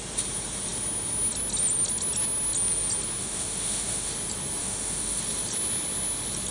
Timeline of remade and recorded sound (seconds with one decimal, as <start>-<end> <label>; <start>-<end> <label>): 0.0-3.2 recorded; 3.2-4.1 remade; 4.1-4.6 recorded; 4.6-5.2 remade; 5.2-6.5 recorded